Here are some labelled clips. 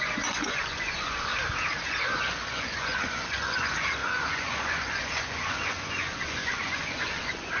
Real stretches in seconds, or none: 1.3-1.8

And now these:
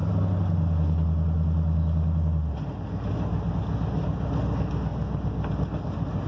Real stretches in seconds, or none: 0.0-6.3

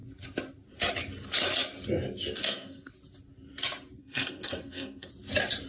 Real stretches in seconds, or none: 0.0-2.4; 2.9-4.0; 5.1-5.7

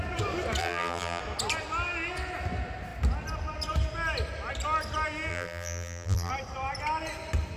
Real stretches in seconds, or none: 0.0-0.6; 1.2-5.3; 6.3-7.6

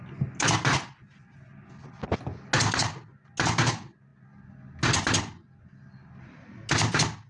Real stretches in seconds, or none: 0.0-7.3